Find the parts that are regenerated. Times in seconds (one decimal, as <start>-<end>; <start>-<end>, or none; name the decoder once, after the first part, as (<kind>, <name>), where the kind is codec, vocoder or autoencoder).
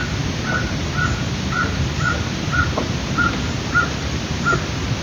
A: none